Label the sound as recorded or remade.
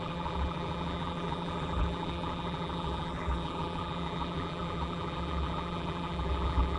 remade